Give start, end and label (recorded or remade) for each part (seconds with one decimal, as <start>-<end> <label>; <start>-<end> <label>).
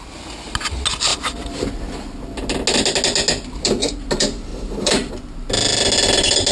0.0-4.5 recorded; 4.5-5.1 remade; 5.1-6.5 recorded